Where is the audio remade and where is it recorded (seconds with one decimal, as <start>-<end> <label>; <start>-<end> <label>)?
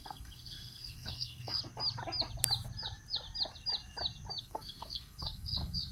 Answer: 0.0-1.6 remade; 1.6-4.4 recorded; 4.4-5.9 remade